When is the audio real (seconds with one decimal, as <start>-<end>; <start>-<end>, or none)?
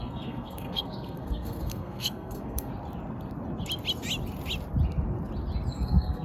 2.7-5.7